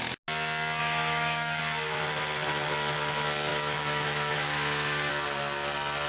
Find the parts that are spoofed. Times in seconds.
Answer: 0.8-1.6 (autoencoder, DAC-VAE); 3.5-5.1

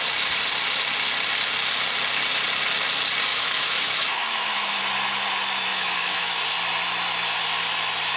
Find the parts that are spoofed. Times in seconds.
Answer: 3.3-4.8 (autoencoder, DAC-VAE); 5.7-6.3

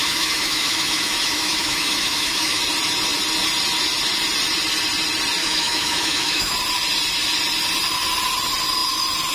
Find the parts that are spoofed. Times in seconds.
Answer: 0.0-2.6 (autoencoder, DAC-VAE); 5.4-6.5